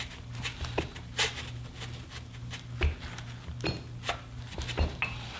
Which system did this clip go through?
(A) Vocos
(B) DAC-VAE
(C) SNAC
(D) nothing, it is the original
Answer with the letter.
D